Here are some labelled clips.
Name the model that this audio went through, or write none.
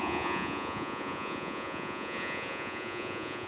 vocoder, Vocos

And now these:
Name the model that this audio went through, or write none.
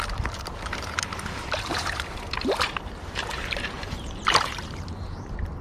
vocoder, BigVGAN v2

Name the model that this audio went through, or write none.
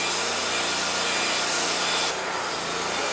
none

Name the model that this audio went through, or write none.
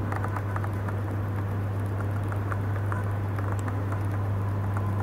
none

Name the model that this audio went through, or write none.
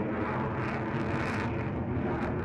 none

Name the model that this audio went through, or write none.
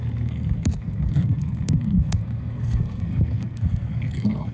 codec, SNAC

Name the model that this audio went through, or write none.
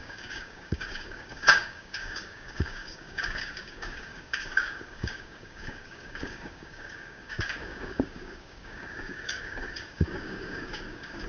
codec, DAC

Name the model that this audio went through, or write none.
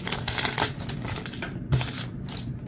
none